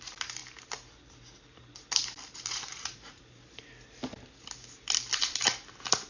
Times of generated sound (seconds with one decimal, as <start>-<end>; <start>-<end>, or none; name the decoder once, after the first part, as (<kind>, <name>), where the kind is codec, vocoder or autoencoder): 2.7-3.2 (vocoder, Vocos)